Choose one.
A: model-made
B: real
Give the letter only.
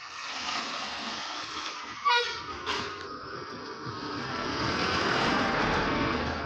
A